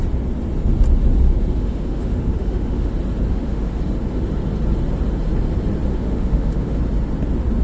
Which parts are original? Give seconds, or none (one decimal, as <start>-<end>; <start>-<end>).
0.0-1.6; 2.9-3.3; 3.8-5.9; 6.8-7.6